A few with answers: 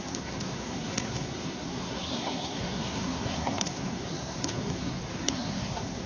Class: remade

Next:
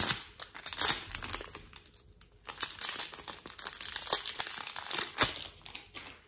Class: recorded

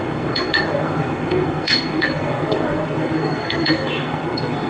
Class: remade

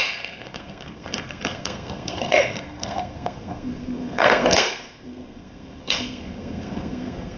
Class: remade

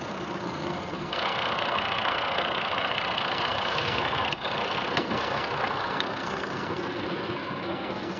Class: remade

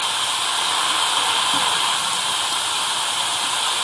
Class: recorded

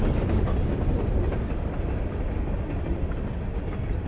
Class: recorded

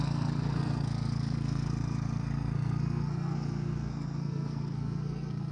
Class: remade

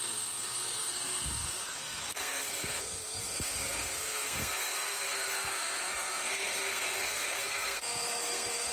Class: remade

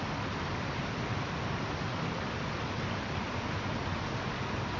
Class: recorded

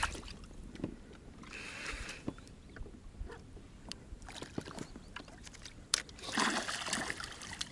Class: recorded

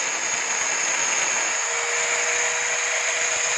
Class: recorded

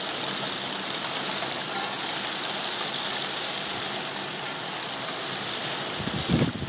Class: recorded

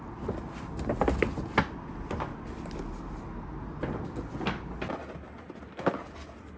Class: recorded